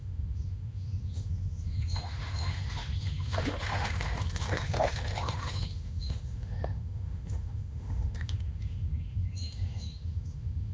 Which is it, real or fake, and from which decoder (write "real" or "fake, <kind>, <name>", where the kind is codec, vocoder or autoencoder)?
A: fake, autoencoder, DAC-VAE